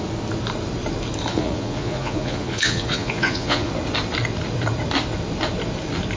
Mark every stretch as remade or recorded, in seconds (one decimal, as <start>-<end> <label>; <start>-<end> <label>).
0.0-1.3 recorded; 1.3-3.7 remade; 3.7-6.2 recorded

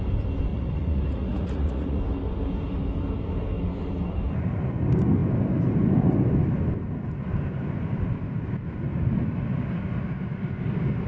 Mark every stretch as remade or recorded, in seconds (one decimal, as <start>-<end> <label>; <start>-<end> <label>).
0.0-0.5 recorded; 0.5-2.0 remade; 2.0-11.1 recorded

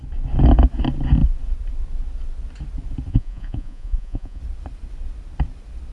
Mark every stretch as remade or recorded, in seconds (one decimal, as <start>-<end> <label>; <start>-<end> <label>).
0.0-3.1 recorded; 3.1-4.4 remade; 4.4-5.9 recorded

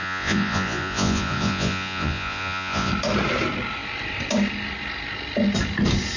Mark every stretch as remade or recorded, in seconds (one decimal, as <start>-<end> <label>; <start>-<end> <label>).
0.0-2.9 remade; 2.9-6.2 recorded

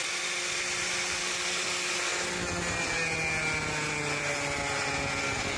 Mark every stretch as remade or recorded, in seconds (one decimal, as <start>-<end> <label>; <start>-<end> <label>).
0.0-5.6 recorded

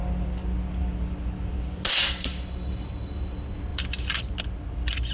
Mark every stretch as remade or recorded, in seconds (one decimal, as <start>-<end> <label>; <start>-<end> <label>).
0.0-5.1 recorded

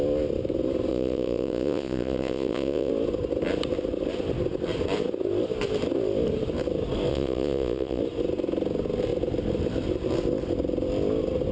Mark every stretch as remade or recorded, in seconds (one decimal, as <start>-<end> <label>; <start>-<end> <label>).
0.0-0.9 recorded; 0.9-2.9 remade; 2.9-7.1 recorded; 7.1-8.0 remade; 8.0-11.5 recorded

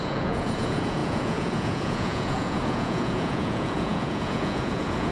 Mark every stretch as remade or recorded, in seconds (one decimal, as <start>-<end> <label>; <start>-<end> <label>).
0.0-5.1 remade